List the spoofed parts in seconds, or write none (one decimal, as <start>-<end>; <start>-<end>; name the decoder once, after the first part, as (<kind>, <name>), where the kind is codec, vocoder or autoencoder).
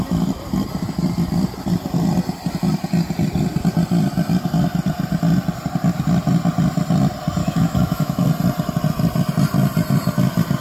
7.4-8.2 (autoencoder, DAC-VAE)